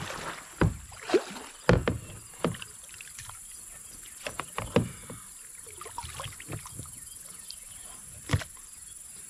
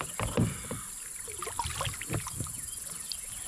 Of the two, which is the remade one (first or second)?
second